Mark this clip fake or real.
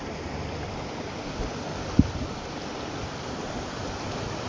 real